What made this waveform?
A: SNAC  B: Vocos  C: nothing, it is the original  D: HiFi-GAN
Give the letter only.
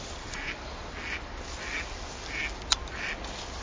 C